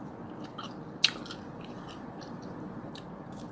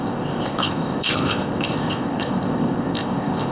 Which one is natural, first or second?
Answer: first